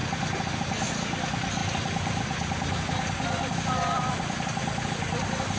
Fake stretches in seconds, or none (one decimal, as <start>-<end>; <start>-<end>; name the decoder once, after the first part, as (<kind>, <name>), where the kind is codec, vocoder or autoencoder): none